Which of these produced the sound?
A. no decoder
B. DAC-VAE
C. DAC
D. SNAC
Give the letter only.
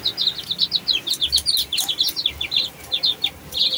A